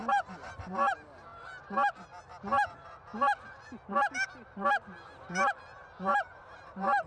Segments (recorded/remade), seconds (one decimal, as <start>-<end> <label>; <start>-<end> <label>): 0.0-0.9 remade; 0.9-6.1 recorded; 6.1-7.1 remade